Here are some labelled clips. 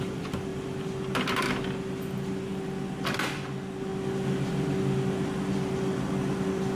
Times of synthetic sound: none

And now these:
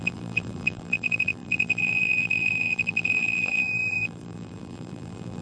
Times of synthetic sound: 0.0-5.4 (vocoder, BigVGAN v2)